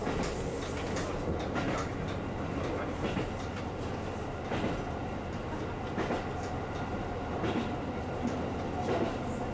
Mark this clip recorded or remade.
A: recorded